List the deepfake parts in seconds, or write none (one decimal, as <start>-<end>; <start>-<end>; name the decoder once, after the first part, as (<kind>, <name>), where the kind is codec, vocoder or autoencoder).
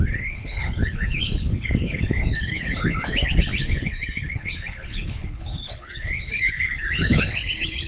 0.0-7.9 (codec, HILCodec)